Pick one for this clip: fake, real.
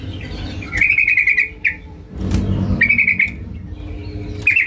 real